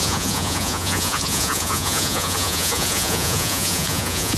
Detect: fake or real fake